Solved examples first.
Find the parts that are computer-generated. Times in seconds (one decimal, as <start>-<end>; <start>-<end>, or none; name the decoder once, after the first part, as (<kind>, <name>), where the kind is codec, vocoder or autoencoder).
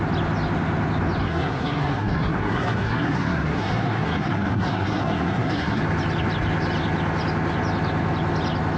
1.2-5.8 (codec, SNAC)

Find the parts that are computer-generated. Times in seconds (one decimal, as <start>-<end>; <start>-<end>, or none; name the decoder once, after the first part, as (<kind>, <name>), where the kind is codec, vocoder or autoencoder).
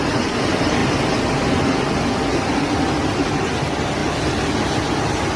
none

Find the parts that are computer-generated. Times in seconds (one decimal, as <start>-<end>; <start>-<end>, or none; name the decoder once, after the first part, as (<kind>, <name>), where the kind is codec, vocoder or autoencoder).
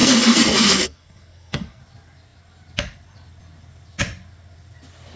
0.0-1.8 (codec, SNAC)